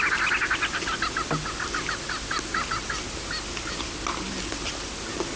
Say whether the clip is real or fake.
real